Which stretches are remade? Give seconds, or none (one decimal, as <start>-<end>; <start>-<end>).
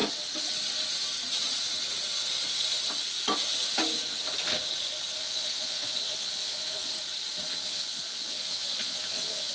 5.2-6.9; 7.5-9.5